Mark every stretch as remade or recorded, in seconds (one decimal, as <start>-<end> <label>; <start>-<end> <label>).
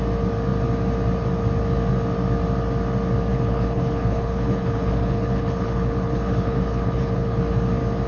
0.0-3.3 recorded; 3.3-7.4 remade; 7.4-8.1 recorded